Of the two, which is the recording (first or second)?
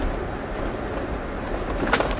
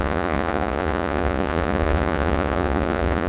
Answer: first